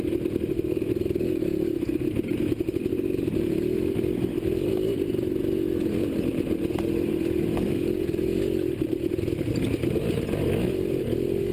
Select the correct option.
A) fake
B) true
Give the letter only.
B